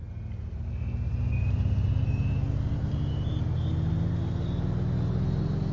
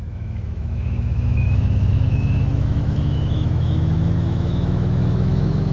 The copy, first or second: second